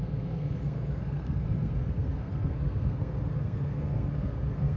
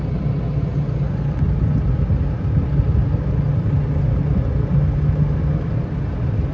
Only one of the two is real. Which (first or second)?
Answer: second